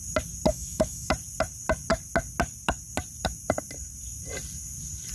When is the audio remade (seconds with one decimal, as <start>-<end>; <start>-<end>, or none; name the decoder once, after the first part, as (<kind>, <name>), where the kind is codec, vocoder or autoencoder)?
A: 0.5-1.1 (autoencoder, DAC-VAE)